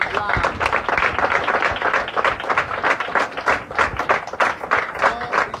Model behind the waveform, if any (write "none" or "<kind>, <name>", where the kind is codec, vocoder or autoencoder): none